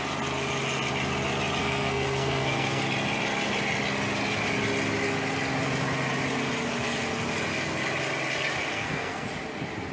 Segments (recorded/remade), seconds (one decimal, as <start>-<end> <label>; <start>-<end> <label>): 0.0-1.6 recorded; 1.6-2.8 remade; 2.8-8.7 recorded; 8.7-9.3 remade; 9.3-9.9 recorded